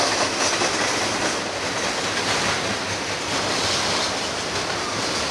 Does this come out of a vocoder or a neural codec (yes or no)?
no